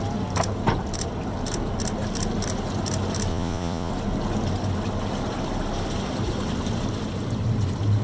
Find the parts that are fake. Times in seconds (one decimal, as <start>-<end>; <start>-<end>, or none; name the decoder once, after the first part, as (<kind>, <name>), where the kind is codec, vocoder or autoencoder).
3.3-3.9 (vocoder, Vocos)